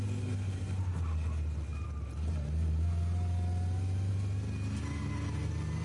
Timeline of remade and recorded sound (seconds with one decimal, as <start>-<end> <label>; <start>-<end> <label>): 0.0-5.8 recorded

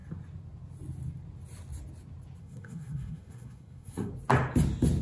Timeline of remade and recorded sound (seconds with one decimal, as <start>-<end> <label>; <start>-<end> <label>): 0.0-2.4 recorded; 2.4-4.1 remade; 4.1-5.0 recorded

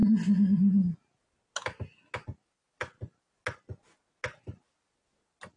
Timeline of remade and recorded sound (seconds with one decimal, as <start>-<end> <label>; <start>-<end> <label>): 0.0-5.6 recorded

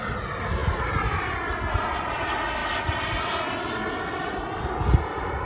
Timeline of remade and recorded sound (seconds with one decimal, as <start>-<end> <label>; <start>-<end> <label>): 0.0-5.5 recorded

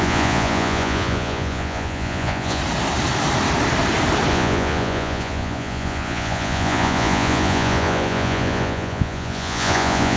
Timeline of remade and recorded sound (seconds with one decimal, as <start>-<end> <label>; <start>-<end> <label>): 0.0-2.6 remade; 2.6-4.3 recorded; 4.3-10.2 remade

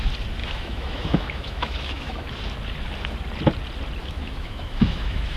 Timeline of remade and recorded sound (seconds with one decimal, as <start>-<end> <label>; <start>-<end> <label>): 0.0-0.4 recorded; 0.4-2.3 remade; 2.3-4.0 recorded; 4.0-5.4 remade

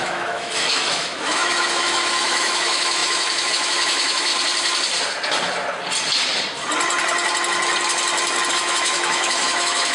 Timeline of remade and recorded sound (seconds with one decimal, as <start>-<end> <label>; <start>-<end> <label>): 0.0-4.3 remade; 4.3-8.5 recorded; 8.5-9.9 remade

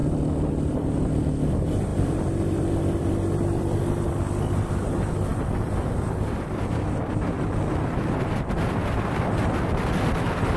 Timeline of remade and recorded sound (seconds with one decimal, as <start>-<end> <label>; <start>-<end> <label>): 0.0-1.9 recorded; 1.9-3.8 remade; 3.8-5.3 recorded; 5.3-9.9 remade; 9.9-10.6 recorded